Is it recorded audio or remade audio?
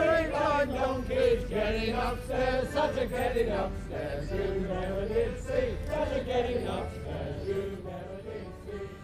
recorded